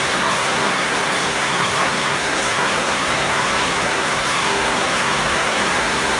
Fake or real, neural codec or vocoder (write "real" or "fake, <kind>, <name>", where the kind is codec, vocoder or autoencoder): fake, codec, SNAC